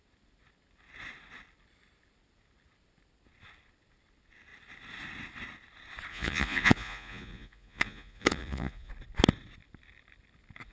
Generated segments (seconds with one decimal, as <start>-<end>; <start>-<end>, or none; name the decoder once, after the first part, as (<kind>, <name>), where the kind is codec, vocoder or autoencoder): 6.1-8.9 (vocoder, Vocos)